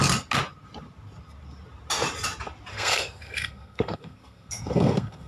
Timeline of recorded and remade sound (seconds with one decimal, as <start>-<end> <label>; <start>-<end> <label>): 0.0-2.7 recorded; 2.7-5.3 remade